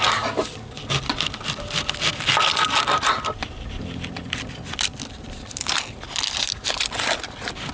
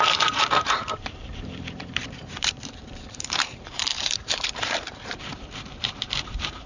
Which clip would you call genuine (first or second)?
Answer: first